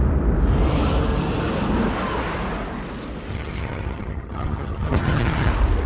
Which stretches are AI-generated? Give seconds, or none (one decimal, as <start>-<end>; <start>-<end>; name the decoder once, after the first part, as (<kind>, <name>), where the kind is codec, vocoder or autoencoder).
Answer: 3.3-5.5 (vocoder, HiFi-GAN)